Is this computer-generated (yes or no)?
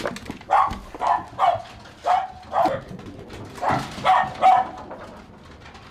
no